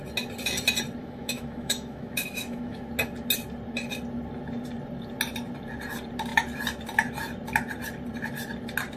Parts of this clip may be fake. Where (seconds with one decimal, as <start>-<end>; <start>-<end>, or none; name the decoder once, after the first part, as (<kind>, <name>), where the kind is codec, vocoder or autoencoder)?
1.0-2.9 (autoencoder, DAC-VAE)

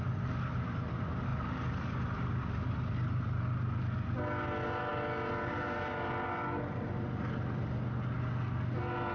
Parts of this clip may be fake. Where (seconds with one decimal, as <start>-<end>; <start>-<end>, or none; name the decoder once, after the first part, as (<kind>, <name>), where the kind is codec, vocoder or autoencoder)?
none

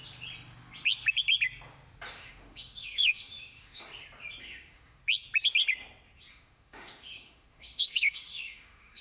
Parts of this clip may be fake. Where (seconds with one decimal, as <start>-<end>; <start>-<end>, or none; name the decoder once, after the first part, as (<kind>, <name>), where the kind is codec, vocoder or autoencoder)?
2.1-3.9 (autoencoder, DAC-VAE); 4.4-5.0; 6.3-9.0

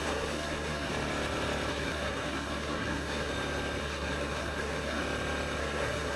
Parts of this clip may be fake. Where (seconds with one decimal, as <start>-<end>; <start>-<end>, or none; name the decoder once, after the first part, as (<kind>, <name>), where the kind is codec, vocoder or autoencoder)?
0.0-0.9 (codec, SNAC); 1.7-3.3; 3.8-5.0; 5.6-6.2

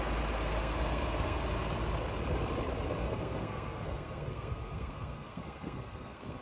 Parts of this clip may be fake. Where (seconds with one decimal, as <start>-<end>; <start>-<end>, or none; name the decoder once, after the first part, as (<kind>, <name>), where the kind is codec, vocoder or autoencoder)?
0.6-1.4 (codec, SNAC); 3.0-6.4

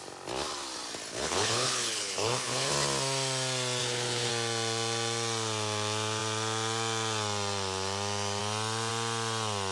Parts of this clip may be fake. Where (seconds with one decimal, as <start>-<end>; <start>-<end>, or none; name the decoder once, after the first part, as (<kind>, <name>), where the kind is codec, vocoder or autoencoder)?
1.1-2.7 (codec, HILCodec); 3.8-4.3

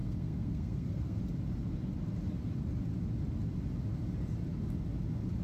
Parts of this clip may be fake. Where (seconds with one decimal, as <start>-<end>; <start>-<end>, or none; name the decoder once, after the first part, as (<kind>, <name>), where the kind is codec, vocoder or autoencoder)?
0.0-1.2 (codec, SNAC)

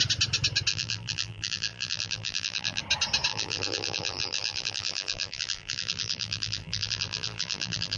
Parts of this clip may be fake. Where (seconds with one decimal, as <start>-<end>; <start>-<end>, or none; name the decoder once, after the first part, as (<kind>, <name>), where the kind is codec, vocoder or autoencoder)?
0.7-2.8 (vocoder, BigVGAN v2); 3.3-8.0